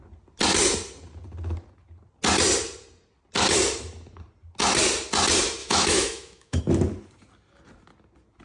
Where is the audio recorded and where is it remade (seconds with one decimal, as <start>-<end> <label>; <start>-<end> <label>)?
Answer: 0.0-5.6 recorded; 5.6-6.6 remade; 6.6-8.4 recorded